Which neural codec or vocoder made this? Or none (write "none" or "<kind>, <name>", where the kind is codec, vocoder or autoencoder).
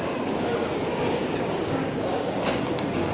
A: codec, DAC